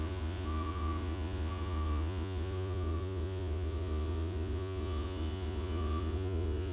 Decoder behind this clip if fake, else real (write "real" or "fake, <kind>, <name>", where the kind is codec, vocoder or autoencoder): fake, vocoder, Vocos